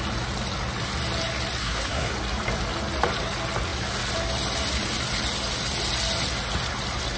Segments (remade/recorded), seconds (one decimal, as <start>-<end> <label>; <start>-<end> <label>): 0.0-1.6 recorded; 1.6-2.1 remade; 2.1-7.2 recorded

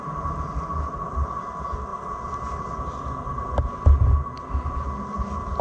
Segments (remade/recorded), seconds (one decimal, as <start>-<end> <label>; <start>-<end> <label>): 0.0-5.6 recorded

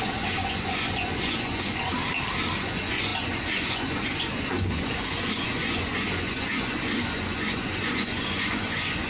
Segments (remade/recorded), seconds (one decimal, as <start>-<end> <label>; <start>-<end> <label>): 0.0-1.9 remade; 1.9-2.6 recorded; 2.6-9.1 remade